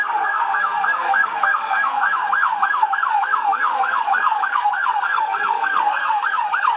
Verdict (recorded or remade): remade